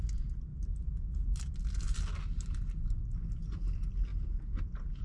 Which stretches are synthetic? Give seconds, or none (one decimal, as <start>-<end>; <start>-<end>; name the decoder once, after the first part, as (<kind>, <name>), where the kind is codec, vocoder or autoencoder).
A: none